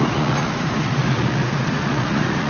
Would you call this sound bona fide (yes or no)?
no